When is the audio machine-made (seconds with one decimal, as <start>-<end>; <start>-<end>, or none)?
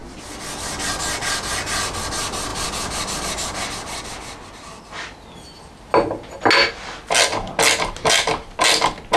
none